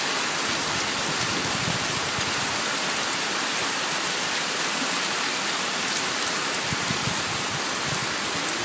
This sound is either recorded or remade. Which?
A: recorded